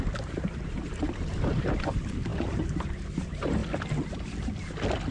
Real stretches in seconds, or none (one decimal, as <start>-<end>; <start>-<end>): 3.6-5.1